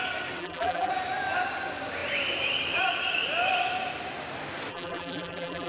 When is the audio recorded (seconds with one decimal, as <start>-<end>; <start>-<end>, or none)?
0.0-0.4; 0.9-4.7